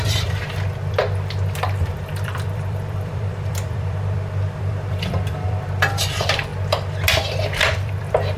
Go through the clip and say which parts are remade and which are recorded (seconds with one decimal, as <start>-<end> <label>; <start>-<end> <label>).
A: 0.0-6.5 remade; 6.5-7.2 recorded; 7.2-8.4 remade